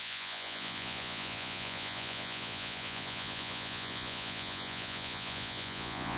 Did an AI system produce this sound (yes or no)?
yes